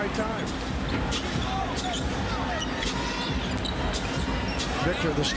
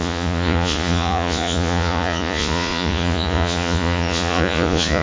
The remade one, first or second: second